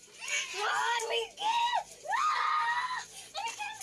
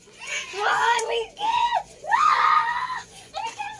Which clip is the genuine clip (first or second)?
first